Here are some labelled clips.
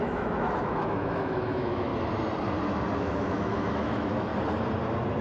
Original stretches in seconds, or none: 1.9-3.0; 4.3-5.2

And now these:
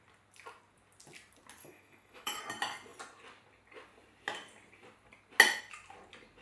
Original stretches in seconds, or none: 0.0-1.6; 2.4-6.4